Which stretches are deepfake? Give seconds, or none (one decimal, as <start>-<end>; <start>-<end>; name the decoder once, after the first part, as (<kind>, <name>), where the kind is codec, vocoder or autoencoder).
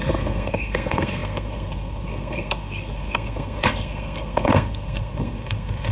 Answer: 0.0-5.9 (codec, SNAC)